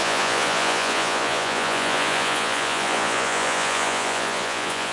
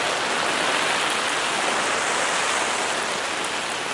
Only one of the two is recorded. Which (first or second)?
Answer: second